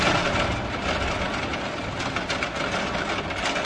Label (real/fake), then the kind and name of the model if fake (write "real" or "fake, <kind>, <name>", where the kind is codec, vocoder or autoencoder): real